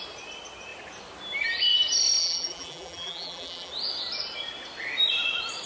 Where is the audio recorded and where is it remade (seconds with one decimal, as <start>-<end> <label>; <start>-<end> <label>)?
0.0-2.2 recorded; 2.2-3.7 remade; 3.7-5.7 recorded